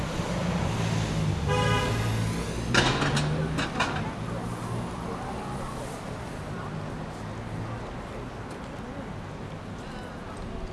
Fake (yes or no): no